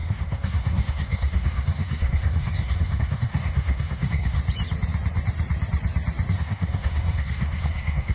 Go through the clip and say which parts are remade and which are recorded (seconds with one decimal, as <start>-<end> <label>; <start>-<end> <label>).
0.0-4.4 remade; 4.4-6.3 recorded; 6.3-8.1 remade